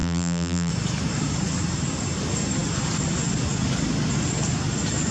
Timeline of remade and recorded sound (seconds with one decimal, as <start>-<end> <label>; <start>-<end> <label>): 0.0-0.7 remade; 0.7-5.1 recorded